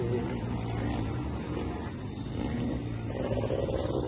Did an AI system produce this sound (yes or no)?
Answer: no